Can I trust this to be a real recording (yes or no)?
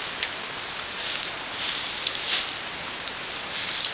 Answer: yes